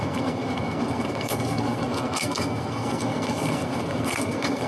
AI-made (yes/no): yes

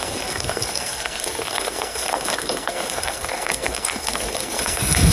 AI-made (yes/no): yes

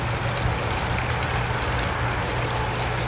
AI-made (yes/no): no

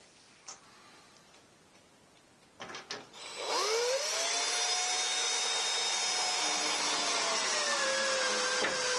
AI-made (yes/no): no